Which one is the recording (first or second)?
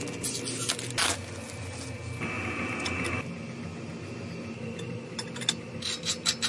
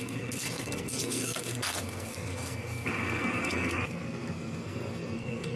first